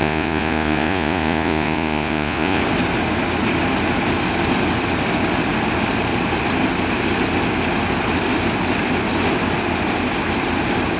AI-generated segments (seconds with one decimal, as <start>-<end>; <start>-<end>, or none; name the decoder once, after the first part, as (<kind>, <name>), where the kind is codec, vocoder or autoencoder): 0.0-2.6 (vocoder, Vocos)